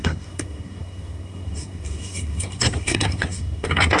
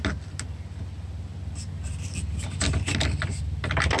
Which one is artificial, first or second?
first